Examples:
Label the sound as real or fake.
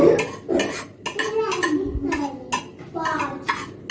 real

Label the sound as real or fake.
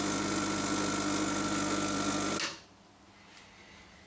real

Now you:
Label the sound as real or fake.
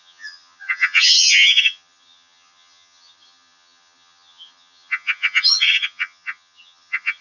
fake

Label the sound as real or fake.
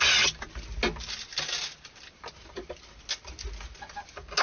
real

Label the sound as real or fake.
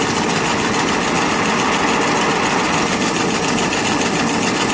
real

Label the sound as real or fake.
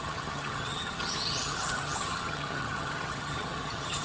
fake